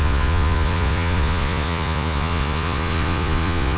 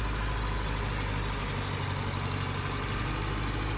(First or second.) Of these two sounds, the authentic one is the second